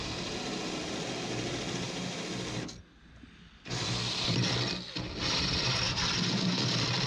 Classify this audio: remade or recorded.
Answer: recorded